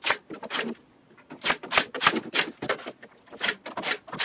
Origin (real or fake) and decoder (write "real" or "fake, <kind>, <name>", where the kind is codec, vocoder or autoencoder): real